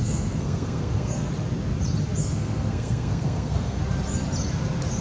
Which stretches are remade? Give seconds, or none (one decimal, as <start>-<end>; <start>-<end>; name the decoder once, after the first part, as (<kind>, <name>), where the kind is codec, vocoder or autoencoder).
0.0-1.3 (codec, SNAC); 2.2-3.8